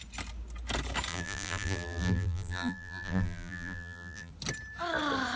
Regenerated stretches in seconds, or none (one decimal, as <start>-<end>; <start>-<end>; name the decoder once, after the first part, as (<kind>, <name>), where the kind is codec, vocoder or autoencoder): 1.1-4.3 (vocoder, BigVGAN v2)